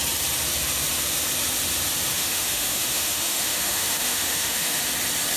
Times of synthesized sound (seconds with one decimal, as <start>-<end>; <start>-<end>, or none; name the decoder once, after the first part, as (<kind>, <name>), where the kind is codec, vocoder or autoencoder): 2.1-4.8 (autoencoder, DAC-VAE)